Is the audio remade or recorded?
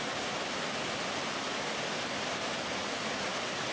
recorded